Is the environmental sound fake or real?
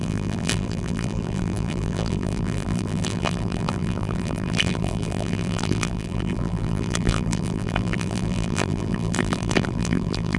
fake